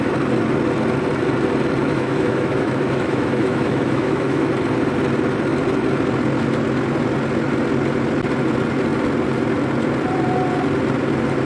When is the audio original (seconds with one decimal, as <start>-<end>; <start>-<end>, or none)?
0.0-1.8; 4.5-11.5